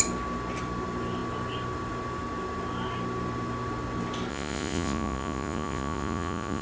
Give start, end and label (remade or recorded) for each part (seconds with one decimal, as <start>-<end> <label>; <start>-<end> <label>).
0.0-4.3 recorded; 4.3-6.6 remade